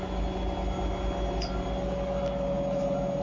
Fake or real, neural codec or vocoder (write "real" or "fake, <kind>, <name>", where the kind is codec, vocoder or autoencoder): real